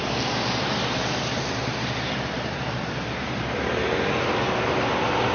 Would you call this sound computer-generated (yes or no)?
yes